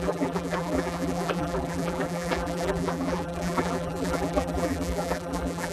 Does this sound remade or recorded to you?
remade